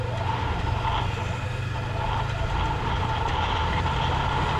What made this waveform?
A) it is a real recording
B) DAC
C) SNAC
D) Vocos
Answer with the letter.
A